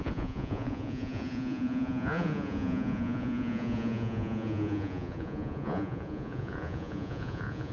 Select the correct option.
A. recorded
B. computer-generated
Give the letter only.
B